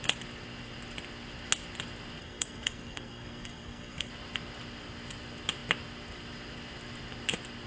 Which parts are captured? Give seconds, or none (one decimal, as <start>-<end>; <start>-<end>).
0.0-2.2; 4.1-7.7